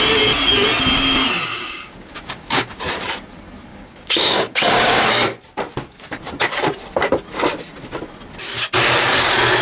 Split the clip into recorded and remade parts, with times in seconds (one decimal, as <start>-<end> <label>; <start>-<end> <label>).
0.0-1.5 recorded; 1.5-2.8 remade; 2.8-3.7 recorded; 3.7-5.1 remade; 5.1-9.6 recorded